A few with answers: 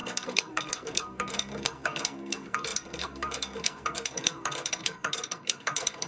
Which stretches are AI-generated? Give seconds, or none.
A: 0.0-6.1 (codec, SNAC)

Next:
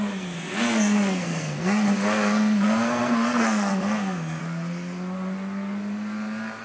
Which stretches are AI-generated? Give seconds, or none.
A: 0.0-4.4 (codec, SNAC)

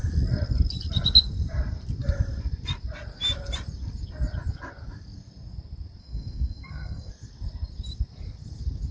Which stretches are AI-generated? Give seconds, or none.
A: 6.0-7.1 (codec, SNAC)